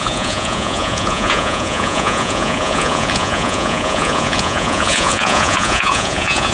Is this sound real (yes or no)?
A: no